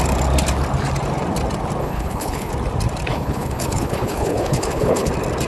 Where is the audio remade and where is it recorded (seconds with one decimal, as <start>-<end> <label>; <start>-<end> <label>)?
0.0-1.8 recorded; 1.8-2.5 remade; 2.5-3.1 recorded; 3.1-5.1 remade; 5.1-5.5 recorded